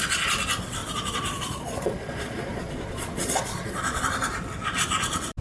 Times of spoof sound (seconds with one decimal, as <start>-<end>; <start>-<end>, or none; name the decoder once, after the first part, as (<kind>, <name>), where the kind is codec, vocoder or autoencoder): 0.8-4.0 (vocoder, Vocos)